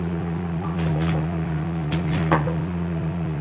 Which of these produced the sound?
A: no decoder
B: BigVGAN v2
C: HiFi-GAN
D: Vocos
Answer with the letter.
D